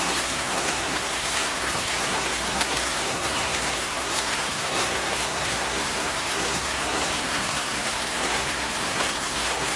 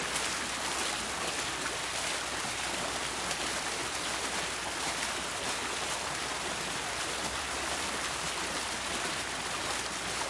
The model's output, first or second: first